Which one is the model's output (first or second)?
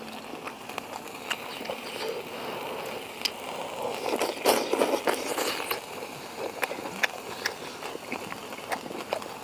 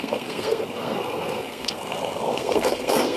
second